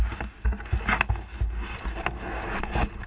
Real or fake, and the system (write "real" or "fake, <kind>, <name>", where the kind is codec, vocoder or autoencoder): real